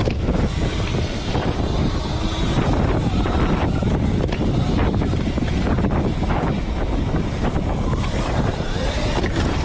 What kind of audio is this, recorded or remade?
recorded